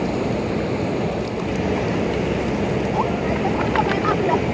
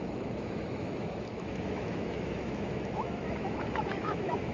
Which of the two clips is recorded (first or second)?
first